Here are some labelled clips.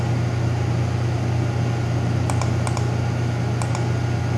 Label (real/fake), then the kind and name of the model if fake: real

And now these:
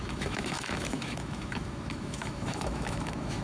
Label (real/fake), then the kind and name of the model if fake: fake, autoencoder, DAC-VAE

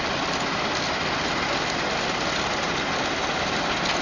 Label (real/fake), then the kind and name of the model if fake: real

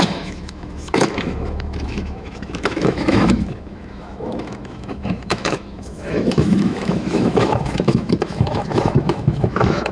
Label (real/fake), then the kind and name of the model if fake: fake, autoencoder, DAC-VAE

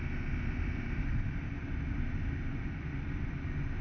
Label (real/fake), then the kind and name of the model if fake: real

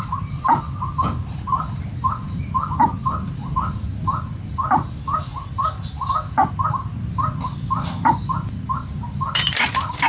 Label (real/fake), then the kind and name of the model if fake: real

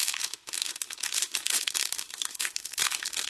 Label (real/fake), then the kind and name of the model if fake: fake, autoencoder, DAC-VAE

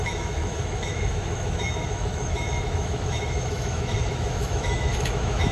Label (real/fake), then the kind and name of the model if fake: fake, autoencoder, DAC-VAE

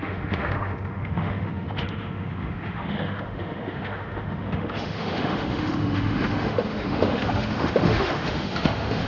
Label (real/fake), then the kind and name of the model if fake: fake, autoencoder, DAC-VAE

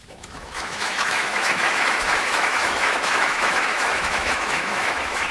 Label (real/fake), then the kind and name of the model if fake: fake, autoencoder, DAC-VAE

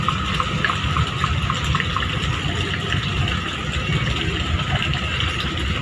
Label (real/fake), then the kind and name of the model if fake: real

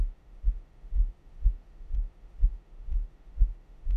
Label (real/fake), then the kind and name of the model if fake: fake, autoencoder, DAC-VAE